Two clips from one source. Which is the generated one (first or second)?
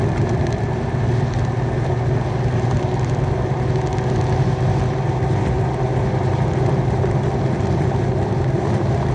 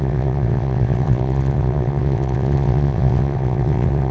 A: second